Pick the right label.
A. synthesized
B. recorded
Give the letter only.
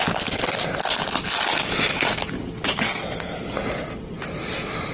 B